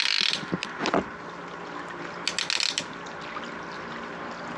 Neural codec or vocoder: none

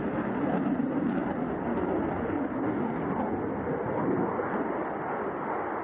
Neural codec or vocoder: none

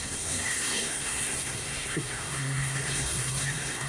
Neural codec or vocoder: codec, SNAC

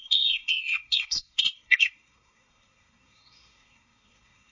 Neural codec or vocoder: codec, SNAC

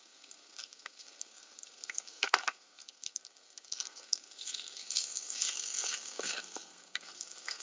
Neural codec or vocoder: codec, SNAC